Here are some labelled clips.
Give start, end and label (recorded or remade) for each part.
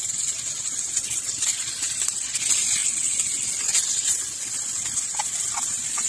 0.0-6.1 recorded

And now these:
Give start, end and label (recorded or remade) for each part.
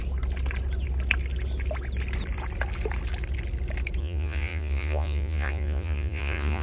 0.0-4.0 recorded; 4.0-6.6 remade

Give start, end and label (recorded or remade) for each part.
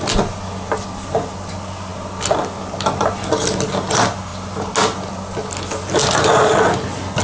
0.0-7.2 recorded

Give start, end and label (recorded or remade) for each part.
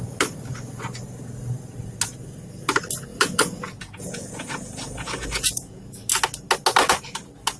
0.0-3.1 recorded; 3.1-5.8 remade; 5.8-7.6 recorded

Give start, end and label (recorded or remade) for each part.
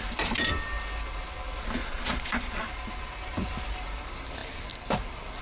0.0-1.8 recorded; 1.8-2.6 remade; 2.6-5.4 recorded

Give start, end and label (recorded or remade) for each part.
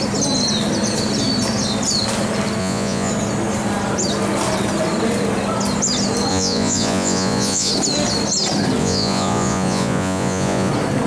0.0-2.6 recorded; 2.6-3.1 remade; 3.1-6.3 recorded; 6.3-7.7 remade; 7.7-8.8 recorded; 8.8-10.7 remade; 10.7-11.1 recorded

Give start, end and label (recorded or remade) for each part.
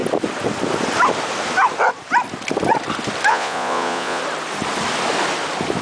0.0-3.3 recorded; 3.3-4.2 remade; 4.2-5.8 recorded